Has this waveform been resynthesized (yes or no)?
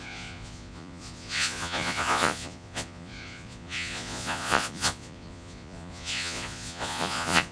yes